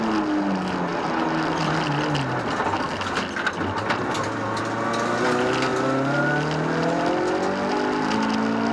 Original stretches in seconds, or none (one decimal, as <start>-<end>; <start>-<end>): 0.0-8.7